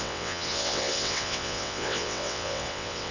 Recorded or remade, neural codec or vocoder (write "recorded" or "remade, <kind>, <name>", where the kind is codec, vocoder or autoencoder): remade, vocoder, WaveNeXt